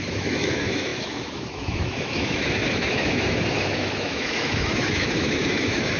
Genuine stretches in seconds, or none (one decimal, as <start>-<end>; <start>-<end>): none